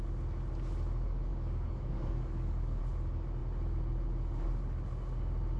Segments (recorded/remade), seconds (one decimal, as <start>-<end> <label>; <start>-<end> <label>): 0.0-1.3 recorded; 1.3-2.8 remade; 2.8-5.6 recorded